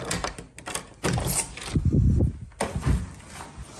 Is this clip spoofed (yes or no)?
no